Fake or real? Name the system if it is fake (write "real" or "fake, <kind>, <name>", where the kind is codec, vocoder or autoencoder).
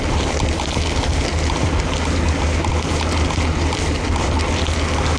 real